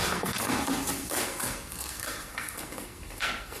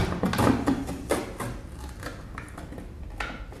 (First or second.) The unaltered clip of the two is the second